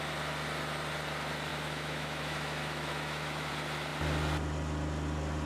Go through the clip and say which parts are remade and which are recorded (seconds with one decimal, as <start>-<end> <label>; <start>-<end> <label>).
0.0-1.5 recorded; 1.5-3.5 remade; 3.5-5.5 recorded

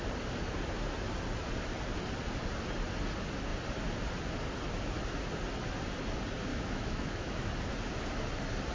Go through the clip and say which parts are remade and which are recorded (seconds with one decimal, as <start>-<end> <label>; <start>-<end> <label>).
0.0-6.5 recorded; 6.5-7.5 remade; 7.5-8.7 recorded

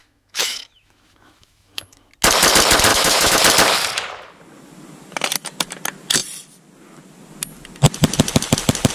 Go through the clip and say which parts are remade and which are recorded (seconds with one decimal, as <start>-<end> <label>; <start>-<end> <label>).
0.0-2.1 remade; 2.1-2.9 recorded; 2.9-3.4 remade; 3.4-8.9 recorded

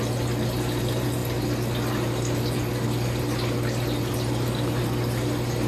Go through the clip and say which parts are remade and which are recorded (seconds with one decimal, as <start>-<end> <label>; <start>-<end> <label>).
0.0-5.7 recorded

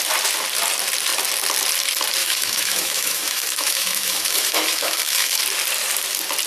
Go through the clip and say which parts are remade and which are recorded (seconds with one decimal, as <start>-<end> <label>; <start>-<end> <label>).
0.0-2.2 recorded; 2.2-5.4 remade; 5.4-6.5 recorded

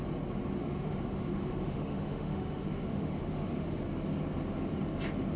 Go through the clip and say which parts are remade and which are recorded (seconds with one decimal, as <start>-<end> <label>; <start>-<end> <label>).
0.0-0.6 recorded; 0.6-3.8 remade; 3.8-5.4 recorded

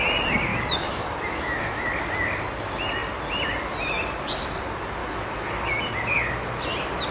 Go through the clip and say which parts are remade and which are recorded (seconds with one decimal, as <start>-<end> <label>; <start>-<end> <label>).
0.0-0.5 recorded; 0.5-1.9 remade; 1.9-5.0 recorded; 5.0-5.7 remade; 5.7-7.1 recorded

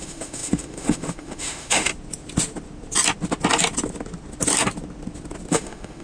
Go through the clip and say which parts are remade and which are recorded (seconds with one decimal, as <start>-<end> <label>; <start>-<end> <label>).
0.0-1.9 remade; 1.9-5.5 recorded; 5.5-6.0 remade